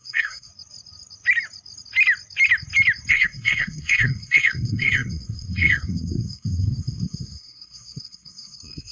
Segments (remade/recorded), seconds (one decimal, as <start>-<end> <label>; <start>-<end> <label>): 0.0-0.5 remade; 0.5-3.1 recorded; 3.1-8.9 remade